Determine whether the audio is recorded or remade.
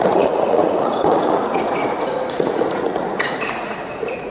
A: remade